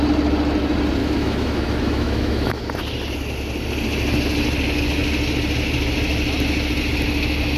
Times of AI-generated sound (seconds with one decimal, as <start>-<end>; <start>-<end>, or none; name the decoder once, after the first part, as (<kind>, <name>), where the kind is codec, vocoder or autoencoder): 1.0-2.6 (autoencoder, DAC-VAE)